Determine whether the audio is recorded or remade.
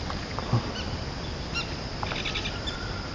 recorded